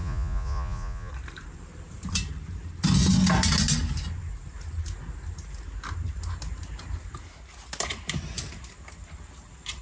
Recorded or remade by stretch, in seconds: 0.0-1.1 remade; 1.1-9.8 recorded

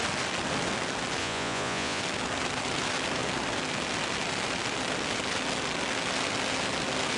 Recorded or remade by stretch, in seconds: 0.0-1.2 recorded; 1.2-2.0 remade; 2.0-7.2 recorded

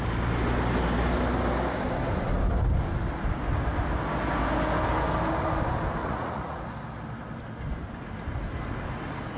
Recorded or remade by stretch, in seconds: 0.0-6.0 recorded; 6.0-6.6 remade; 6.6-9.4 recorded

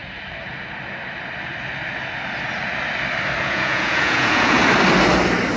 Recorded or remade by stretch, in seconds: 0.0-3.4 recorded; 3.4-4.6 remade; 4.6-5.6 recorded

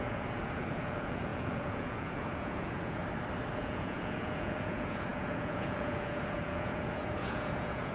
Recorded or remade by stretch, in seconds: 0.0-3.0 remade; 3.0-3.5 recorded; 3.5-7.9 remade

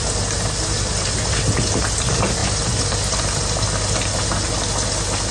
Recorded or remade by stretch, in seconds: 0.0-5.3 recorded

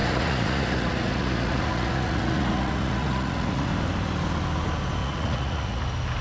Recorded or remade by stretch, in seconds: 0.0-3.7 remade; 3.7-5.0 recorded; 5.0-5.8 remade; 5.8-6.2 recorded